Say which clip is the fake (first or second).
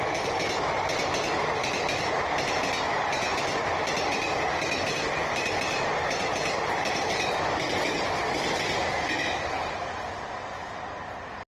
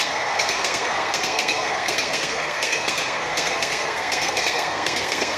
second